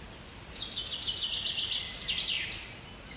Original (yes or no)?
yes